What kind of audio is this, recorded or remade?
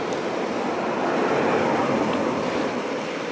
recorded